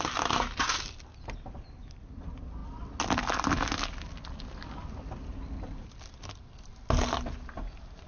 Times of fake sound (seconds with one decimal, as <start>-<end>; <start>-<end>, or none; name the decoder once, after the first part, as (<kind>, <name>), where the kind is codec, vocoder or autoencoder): none

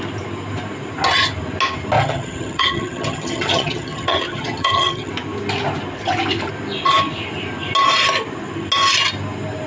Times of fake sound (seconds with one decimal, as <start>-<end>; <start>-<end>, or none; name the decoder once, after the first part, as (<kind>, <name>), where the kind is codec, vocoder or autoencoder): 2.0-5.1 (vocoder, HiFi-GAN)

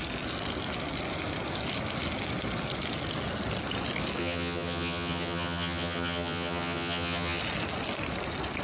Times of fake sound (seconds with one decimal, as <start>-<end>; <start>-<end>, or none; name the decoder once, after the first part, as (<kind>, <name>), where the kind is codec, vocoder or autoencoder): 4.2-7.4 (vocoder, HiFi-GAN)

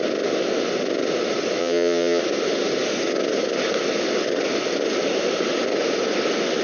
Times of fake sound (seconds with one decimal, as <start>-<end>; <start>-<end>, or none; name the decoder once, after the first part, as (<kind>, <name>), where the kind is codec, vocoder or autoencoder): 1.6-2.2 (vocoder, HiFi-GAN)

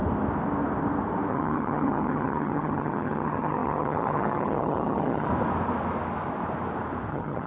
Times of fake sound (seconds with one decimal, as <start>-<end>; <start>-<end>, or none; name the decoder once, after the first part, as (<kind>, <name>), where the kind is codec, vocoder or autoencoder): 1.3-5.3 (vocoder, HiFi-GAN); 7.1-7.5

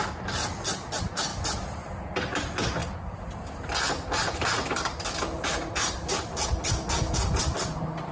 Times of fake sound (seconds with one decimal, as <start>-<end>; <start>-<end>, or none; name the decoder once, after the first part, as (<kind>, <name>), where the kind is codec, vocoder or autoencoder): none

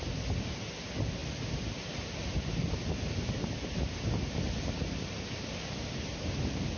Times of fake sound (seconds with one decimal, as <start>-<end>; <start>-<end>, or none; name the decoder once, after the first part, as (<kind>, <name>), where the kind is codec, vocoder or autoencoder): none